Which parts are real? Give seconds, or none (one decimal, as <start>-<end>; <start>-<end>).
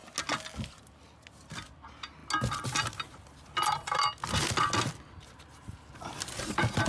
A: 0.0-6.9